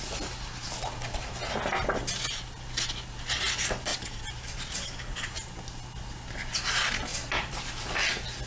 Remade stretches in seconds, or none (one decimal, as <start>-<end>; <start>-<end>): 3.9-5.6; 7.1-7.7